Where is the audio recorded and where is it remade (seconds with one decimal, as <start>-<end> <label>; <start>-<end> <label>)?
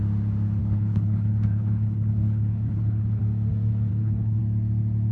0.0-0.6 recorded; 0.6-3.2 remade; 3.2-3.9 recorded; 3.9-4.4 remade; 4.4-5.1 recorded